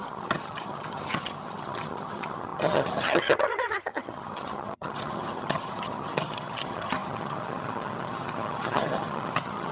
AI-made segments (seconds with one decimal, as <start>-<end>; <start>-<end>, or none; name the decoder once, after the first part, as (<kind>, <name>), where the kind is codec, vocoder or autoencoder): 0.0-9.7 (vocoder, HiFi-GAN)